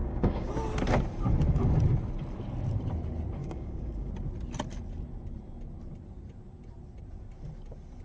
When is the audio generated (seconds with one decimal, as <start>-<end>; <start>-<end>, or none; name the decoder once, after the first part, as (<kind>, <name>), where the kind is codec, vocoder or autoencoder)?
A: 0.0-0.5 (codec, DAC); 3.4-4.1